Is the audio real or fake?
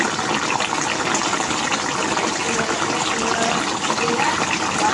real